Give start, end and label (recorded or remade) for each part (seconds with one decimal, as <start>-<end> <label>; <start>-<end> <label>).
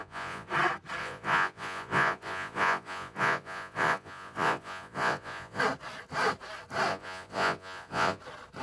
0.0-0.5 remade; 0.5-1.0 recorded; 1.0-5.6 remade; 5.6-6.9 recorded; 6.9-8.2 remade; 8.2-8.6 recorded